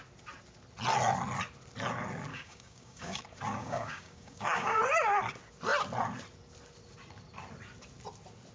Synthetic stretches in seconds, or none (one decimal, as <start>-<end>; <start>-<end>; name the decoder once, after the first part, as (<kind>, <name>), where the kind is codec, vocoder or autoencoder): 2.3-3.2 (codec, DAC); 3.6-4.8